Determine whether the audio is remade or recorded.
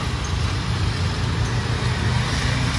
recorded